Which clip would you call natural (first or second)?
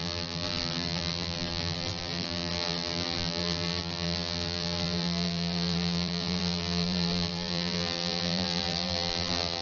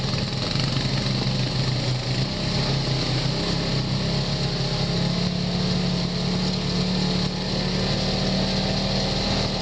second